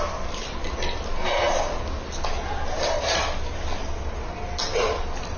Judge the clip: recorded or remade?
recorded